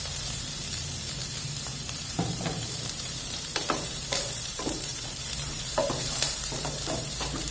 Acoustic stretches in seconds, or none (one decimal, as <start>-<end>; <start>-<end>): none